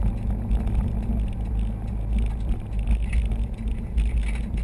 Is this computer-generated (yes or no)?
no